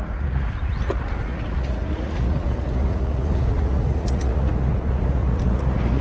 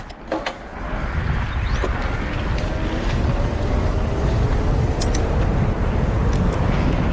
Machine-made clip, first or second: first